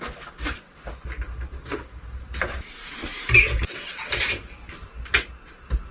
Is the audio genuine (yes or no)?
no